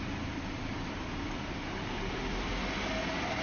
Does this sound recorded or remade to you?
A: remade